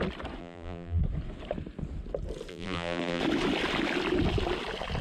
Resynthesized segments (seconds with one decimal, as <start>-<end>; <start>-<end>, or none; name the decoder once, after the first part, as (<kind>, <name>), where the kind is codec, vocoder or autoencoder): 0.4-1.0 (vocoder, BigVGAN v2); 2.5-3.2